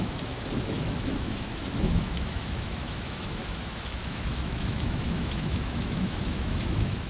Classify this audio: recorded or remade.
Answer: remade